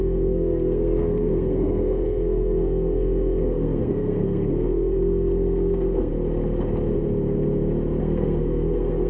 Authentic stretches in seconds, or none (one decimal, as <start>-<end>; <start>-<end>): 6.1-8.0